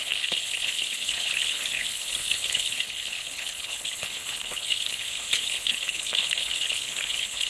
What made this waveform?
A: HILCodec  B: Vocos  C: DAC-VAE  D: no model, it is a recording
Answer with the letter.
A